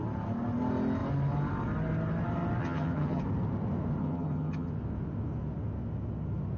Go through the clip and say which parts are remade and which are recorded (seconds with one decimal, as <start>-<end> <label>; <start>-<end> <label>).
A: 0.0-2.6 recorded; 2.6-3.2 remade; 3.2-4.0 recorded; 4.0-4.7 remade; 4.7-6.6 recorded